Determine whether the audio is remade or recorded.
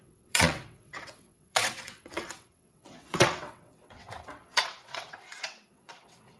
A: remade